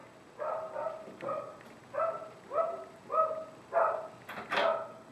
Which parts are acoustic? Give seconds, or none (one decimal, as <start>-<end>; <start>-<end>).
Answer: 0.0-5.1